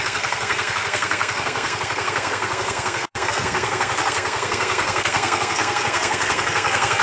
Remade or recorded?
remade